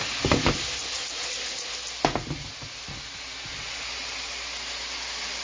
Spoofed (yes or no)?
no